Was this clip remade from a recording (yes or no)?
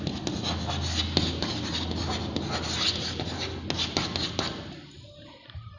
no